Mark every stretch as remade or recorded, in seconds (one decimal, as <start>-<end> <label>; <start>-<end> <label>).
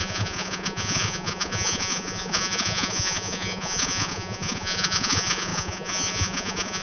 0.0-6.8 remade